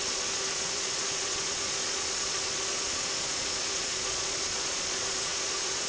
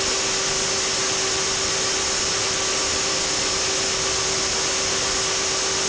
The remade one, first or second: first